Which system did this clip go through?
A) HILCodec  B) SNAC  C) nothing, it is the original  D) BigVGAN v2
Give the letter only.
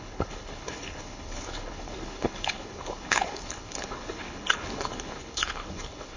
A